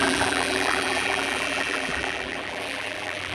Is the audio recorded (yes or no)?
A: no